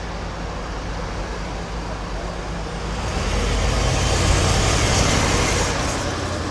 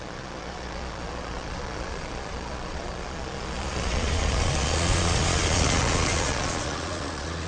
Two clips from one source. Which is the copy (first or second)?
second